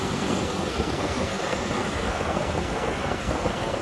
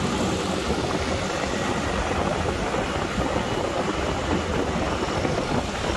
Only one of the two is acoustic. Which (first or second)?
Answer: second